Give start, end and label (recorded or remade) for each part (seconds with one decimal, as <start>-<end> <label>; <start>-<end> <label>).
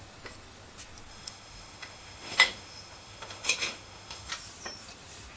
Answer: 0.0-1.1 recorded; 1.1-4.3 remade; 4.3-5.4 recorded